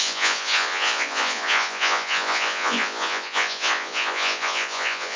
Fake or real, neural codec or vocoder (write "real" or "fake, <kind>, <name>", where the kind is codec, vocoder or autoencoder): fake, vocoder, Vocos